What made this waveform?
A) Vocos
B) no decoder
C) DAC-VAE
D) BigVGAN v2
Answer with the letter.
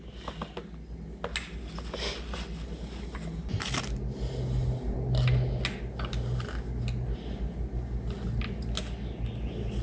B